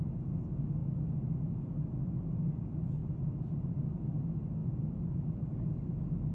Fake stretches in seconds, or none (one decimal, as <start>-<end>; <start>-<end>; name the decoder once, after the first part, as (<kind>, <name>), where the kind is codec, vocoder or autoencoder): none